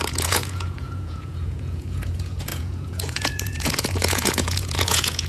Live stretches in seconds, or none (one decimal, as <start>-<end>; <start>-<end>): none